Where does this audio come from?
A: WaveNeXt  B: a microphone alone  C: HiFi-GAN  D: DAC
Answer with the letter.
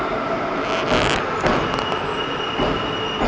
B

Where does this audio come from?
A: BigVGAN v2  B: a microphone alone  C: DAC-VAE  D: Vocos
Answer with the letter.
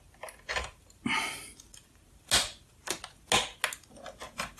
B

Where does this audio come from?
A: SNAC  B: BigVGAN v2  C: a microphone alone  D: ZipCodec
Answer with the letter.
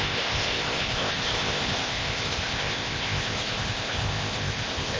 D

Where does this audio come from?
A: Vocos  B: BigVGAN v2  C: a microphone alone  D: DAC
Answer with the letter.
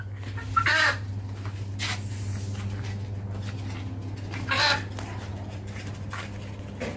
C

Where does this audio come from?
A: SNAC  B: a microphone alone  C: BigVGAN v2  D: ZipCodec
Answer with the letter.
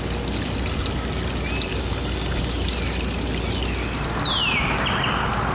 B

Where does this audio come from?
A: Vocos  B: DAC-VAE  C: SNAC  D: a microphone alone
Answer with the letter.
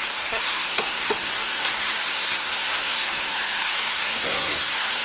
C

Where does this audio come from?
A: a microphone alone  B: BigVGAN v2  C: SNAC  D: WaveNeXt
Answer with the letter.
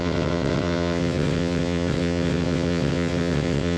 D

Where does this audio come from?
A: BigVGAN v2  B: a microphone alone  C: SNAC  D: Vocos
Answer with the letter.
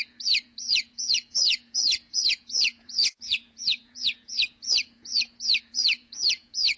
D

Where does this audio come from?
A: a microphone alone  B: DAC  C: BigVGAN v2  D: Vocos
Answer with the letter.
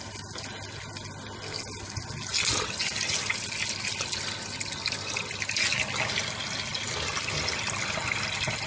A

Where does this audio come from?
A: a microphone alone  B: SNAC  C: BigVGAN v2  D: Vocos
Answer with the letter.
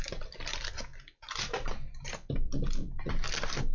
A